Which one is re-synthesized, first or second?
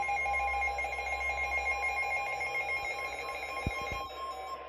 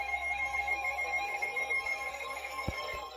second